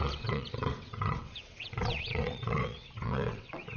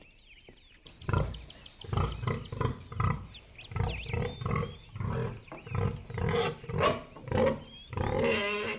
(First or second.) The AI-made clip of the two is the first